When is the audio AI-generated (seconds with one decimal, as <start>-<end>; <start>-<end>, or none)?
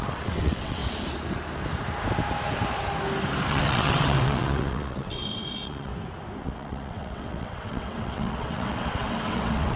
0.0-0.8; 3.5-5.9; 6.4-9.8